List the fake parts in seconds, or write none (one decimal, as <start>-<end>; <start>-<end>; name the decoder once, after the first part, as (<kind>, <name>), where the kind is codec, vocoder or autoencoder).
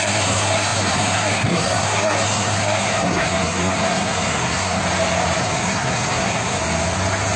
0.0-4.8 (codec, SNAC); 5.4-6.6